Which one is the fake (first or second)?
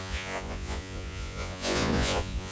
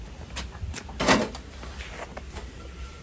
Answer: first